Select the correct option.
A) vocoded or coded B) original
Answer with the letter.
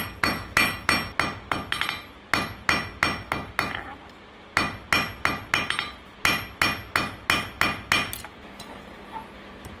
B